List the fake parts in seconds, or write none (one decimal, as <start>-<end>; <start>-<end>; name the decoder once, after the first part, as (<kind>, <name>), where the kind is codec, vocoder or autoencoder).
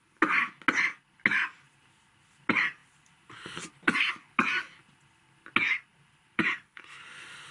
2.8-4.1 (vocoder, BigVGAN v2); 5.9-6.8